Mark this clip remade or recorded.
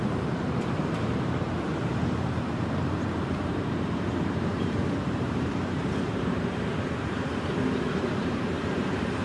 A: remade